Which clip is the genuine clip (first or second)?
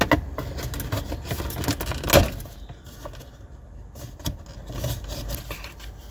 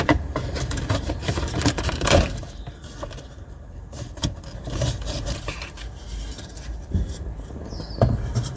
first